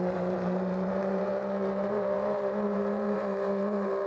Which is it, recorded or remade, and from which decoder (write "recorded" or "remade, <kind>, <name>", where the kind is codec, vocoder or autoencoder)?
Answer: remade, vocoder, BigVGAN v2